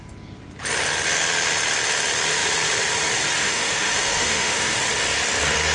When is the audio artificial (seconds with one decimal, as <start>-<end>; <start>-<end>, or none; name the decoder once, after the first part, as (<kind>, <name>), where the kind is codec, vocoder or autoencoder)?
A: 3.4-4.8 (autoencoder, DAC-VAE)